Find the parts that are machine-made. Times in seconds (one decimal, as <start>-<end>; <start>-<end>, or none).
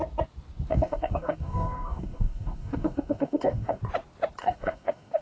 0.7-3.8; 4.4-5.2